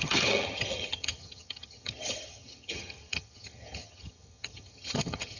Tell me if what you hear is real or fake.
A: fake